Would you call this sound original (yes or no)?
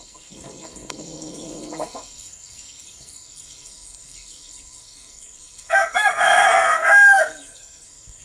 no